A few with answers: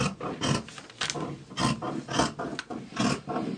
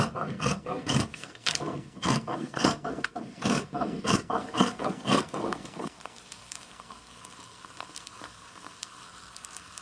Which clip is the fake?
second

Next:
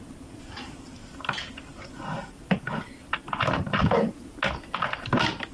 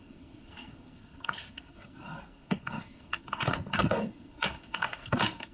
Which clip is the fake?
second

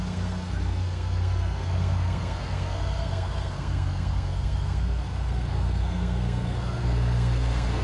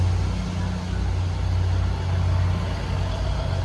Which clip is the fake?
first